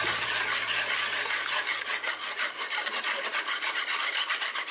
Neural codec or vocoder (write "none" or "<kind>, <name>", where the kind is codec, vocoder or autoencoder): none